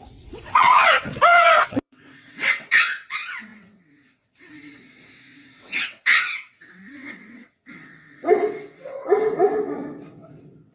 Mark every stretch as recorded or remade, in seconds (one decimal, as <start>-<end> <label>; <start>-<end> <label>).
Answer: 0.0-10.7 remade